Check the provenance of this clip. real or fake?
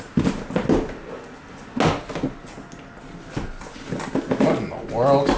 real